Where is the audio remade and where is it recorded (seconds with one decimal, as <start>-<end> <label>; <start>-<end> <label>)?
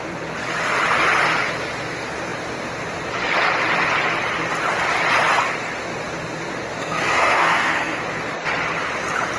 0.0-6.8 recorded; 6.8-8.0 remade; 8.0-9.4 recorded